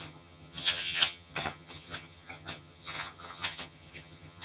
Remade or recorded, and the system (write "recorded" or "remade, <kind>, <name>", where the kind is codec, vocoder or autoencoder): remade, vocoder, HiFi-GAN